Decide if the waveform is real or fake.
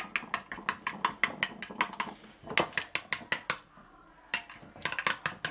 real